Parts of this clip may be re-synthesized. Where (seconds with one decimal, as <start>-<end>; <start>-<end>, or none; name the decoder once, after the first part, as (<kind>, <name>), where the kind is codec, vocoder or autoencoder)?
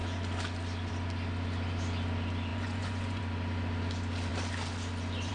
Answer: 2.5-3.2 (vocoder, Vocos)